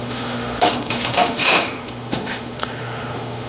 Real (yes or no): no